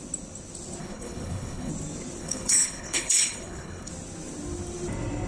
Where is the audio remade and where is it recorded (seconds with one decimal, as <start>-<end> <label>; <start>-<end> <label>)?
0.0-0.8 recorded; 0.8-1.7 remade; 1.7-2.2 recorded; 2.2-3.9 remade; 3.9-5.3 recorded